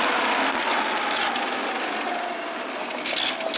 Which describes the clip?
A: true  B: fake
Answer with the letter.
A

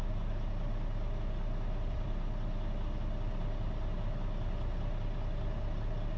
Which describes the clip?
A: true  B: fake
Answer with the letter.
A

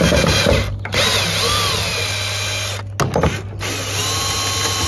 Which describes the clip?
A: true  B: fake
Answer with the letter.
A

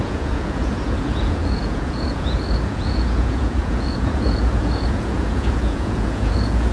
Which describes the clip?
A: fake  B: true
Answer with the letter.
A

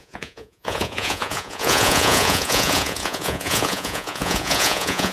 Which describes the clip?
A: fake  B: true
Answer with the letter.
A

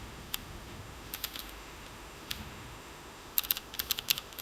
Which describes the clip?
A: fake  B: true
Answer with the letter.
A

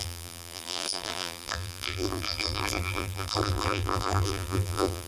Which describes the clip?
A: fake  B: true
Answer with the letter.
A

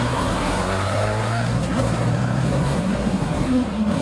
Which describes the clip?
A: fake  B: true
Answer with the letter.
A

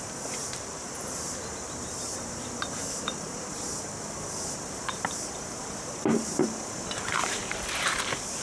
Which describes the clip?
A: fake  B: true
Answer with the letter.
A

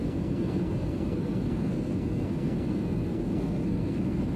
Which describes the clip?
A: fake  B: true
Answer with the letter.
A